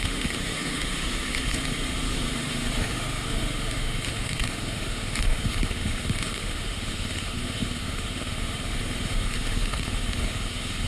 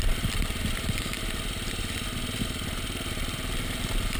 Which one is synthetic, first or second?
first